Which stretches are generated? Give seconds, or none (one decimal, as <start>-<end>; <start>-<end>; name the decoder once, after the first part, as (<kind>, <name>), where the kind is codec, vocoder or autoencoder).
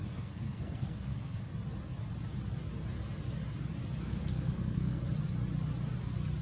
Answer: 0.0-1.5 (codec, SNAC); 4.0-5.0